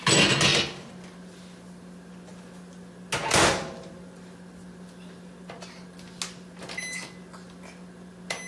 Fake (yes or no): no